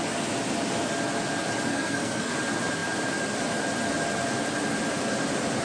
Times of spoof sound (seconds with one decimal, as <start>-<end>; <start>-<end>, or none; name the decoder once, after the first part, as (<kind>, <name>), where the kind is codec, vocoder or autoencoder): 1.7-2.3 (codec, SNAC)